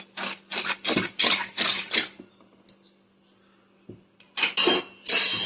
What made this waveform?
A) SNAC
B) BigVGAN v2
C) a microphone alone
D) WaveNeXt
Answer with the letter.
C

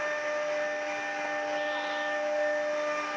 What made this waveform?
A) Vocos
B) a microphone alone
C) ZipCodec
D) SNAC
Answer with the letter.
B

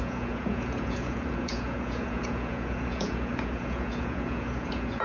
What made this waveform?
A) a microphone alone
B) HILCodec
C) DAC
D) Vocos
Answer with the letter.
D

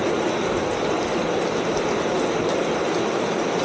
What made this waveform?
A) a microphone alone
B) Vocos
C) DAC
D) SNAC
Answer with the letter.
A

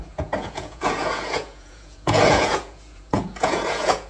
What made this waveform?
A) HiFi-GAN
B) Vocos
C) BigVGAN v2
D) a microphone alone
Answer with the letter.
B